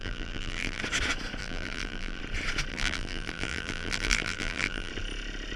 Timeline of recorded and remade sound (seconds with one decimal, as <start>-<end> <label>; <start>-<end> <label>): 0.0-0.8 remade; 0.8-1.4 recorded; 1.4-2.2 remade; 2.2-2.7 recorded; 2.7-4.9 remade; 4.9-5.6 recorded